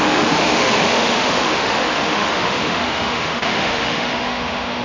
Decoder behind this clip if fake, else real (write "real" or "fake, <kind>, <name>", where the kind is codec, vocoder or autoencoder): fake, autoencoder, DAC-VAE